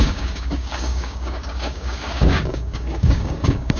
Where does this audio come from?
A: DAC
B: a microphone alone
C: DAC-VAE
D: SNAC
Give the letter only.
A